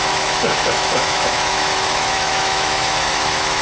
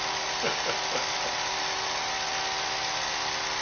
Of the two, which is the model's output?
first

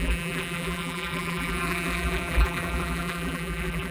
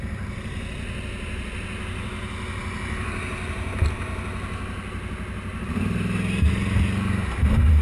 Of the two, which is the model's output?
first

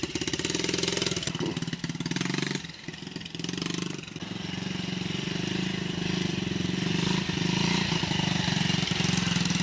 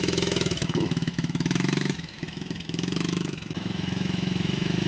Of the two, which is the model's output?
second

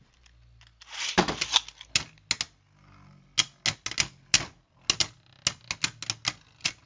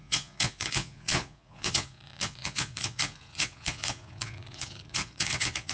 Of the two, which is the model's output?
second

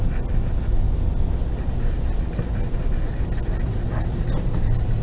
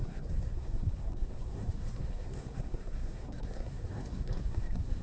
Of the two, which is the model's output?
second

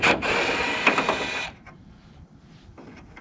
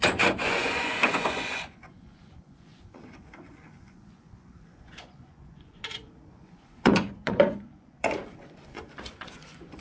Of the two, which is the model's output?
second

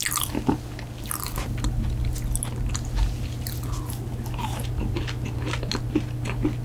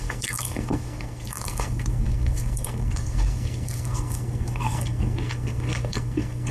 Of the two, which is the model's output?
second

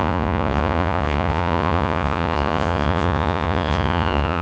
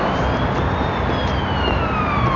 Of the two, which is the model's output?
first